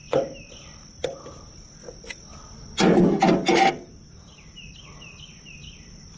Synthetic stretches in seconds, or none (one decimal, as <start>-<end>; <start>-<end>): none